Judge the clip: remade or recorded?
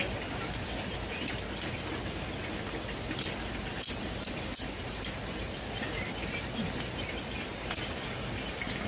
recorded